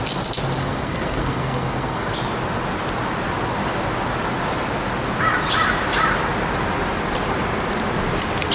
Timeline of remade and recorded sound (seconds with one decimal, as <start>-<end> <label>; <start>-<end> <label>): 0.0-0.6 recorded; 0.6-2.1 remade; 2.1-8.5 recorded